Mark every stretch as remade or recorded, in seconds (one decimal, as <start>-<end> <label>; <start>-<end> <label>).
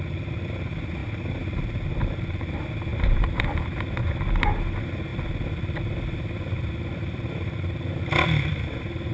0.0-2.9 recorded; 2.9-3.8 remade; 3.8-5.1 recorded; 5.1-8.5 remade; 8.5-9.1 recorded